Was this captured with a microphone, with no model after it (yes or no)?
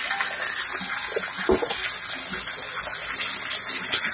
yes